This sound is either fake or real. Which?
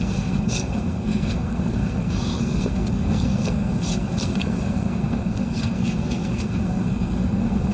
fake